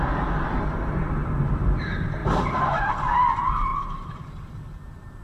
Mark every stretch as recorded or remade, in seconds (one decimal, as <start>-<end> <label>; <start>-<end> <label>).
0.0-3.7 recorded; 3.7-4.3 remade; 4.3-5.2 recorded